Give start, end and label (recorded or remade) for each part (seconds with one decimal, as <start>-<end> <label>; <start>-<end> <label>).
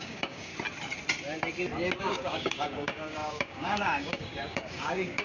0.0-0.5 remade; 0.5-2.0 recorded; 2.0-5.2 remade